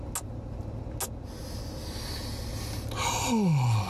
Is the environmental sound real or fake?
real